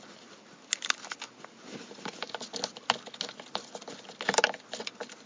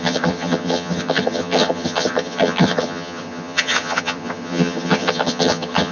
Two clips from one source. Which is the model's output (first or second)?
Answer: second